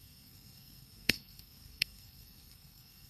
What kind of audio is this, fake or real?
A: fake